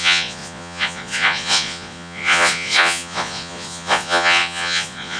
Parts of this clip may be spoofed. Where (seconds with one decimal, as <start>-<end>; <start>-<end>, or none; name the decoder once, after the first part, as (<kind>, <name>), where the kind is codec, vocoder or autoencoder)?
0.0-5.2 (vocoder, Vocos)